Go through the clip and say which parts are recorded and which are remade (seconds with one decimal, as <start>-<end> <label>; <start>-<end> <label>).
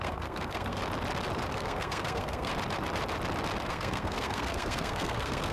0.0-0.8 remade; 0.8-1.5 recorded; 1.5-2.5 remade; 2.5-3.7 recorded; 3.7-5.5 remade